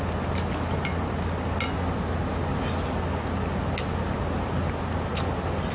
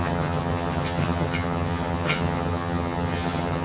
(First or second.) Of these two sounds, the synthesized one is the second